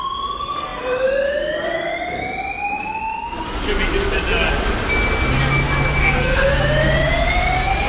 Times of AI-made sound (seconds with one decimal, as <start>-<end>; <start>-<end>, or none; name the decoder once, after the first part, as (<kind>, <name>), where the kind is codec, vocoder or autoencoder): 6.0-6.6 (codec, SNAC)